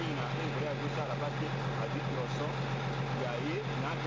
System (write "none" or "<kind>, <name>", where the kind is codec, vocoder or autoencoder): none